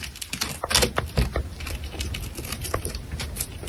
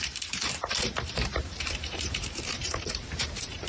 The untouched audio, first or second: first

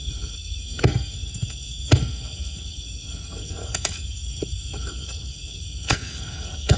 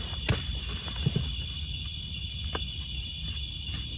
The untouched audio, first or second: second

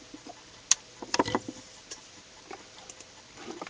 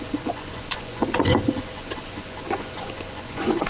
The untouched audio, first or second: first